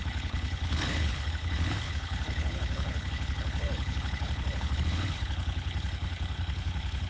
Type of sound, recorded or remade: remade